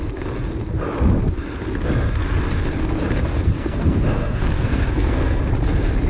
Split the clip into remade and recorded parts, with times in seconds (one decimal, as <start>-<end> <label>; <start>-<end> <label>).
0.0-3.3 recorded; 3.3-5.4 remade; 5.4-6.1 recorded